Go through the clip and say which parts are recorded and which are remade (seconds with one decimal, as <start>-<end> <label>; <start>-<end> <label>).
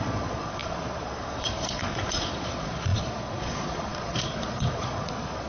0.0-5.5 remade